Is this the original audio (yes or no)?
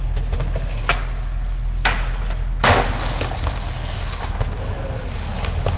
yes